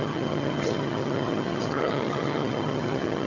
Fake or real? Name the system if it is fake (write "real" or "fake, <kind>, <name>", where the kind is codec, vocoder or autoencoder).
fake, vocoder, HiFi-GAN